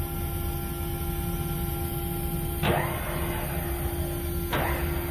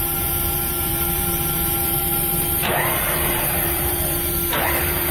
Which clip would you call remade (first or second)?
second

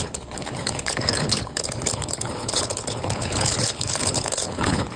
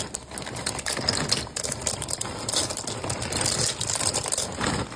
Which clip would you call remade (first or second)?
first